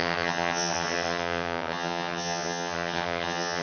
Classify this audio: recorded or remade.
remade